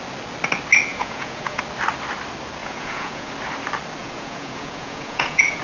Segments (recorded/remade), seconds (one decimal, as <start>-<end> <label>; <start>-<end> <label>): 0.0-0.9 recorded; 0.9-1.6 remade; 1.6-2.6 recorded; 2.6-3.3 remade; 3.3-4.0 recorded; 4.0-5.6 remade